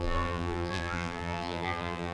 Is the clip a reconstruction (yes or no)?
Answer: yes